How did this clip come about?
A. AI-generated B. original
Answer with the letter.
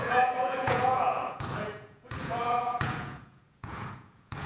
A